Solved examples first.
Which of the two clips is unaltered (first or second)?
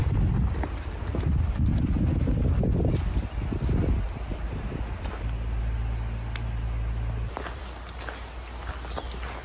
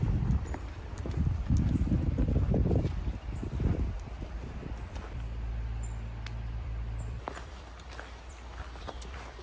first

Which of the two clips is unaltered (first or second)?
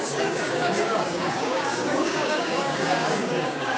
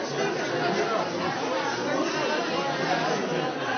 second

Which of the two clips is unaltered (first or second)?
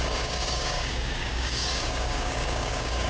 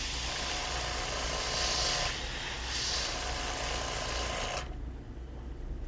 second